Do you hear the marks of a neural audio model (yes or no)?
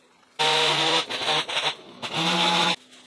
no